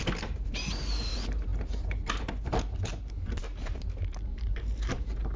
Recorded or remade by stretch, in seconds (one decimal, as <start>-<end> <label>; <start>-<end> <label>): 0.0-4.3 recorded; 4.3-5.4 remade